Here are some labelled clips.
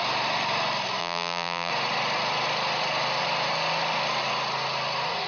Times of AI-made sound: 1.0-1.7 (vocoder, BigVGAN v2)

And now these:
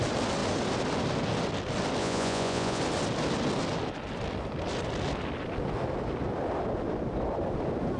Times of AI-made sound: 2.0-2.8 (vocoder, Vocos)

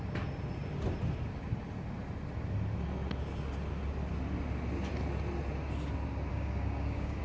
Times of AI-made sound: 6.3-7.2 (codec, DAC)